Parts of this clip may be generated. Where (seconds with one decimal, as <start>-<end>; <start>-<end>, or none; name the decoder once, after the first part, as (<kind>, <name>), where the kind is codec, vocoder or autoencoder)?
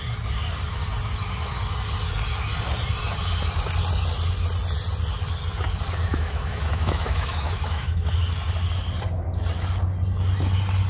6.1-8.1 (autoencoder, DAC-VAE)